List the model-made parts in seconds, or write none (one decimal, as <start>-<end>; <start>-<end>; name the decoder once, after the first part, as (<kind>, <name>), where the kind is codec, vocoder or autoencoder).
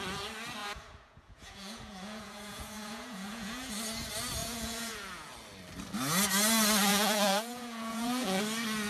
0.6-3.7 (vocoder, Vocos); 4.4-5.3; 6.9-8.4